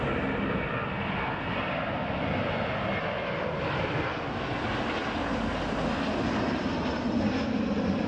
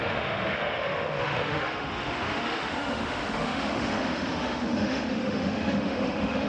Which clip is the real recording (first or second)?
first